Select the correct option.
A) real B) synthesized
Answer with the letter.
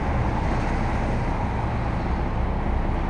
A